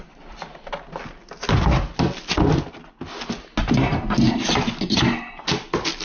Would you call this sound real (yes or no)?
yes